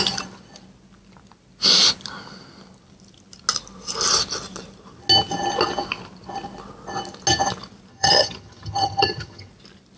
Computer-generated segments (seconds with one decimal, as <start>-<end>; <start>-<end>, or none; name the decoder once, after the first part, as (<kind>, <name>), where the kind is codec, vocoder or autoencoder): 7.9-9.5 (vocoder, HiFi-GAN)

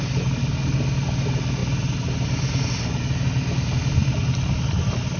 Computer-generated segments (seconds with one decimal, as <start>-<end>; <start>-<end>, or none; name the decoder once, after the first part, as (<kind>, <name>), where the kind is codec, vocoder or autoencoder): none

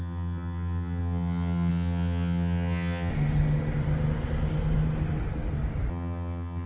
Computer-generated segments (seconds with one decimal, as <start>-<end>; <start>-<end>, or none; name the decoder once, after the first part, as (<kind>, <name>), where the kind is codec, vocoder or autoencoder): 0.0-3.1 (vocoder, HiFi-GAN); 5.9-6.7

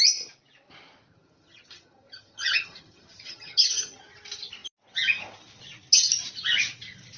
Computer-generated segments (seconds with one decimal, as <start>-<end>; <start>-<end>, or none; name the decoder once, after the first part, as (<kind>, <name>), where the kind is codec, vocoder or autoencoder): 1.1-4.0 (vocoder, HiFi-GAN)